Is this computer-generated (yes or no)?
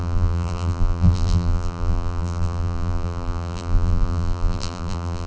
yes